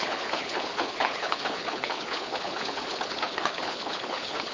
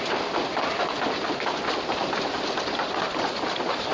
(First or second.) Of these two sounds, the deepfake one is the first